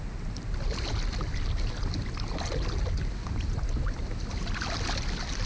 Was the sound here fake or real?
real